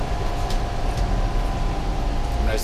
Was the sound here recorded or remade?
recorded